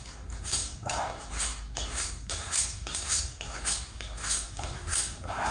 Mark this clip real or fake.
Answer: fake